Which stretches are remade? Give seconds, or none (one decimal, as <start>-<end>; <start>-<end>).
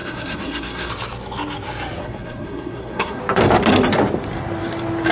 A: 0.0-0.9; 2.0-3.2